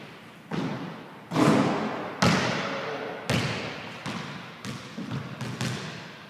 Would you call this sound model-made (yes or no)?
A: no